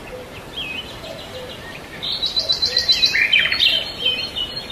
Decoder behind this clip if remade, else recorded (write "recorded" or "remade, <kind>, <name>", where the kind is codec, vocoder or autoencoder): remade, vocoder, BigVGAN v2